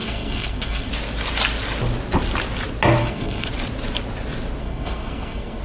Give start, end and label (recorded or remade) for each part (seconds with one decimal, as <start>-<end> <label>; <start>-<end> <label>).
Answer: 0.0-0.9 remade; 0.9-3.0 recorded; 3.0-3.5 remade; 3.5-4.6 recorded; 4.6-5.6 remade